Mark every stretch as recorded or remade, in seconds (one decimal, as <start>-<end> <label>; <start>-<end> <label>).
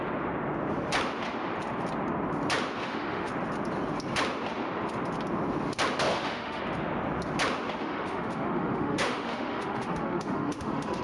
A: 0.0-2.8 recorded; 2.8-3.3 remade; 3.3-6.1 recorded; 6.1-6.6 remade; 6.6-7.8 recorded; 7.8-11.0 remade